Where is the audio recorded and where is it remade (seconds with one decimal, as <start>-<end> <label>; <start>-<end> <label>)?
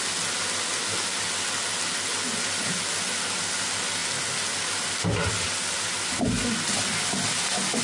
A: 0.0-7.8 recorded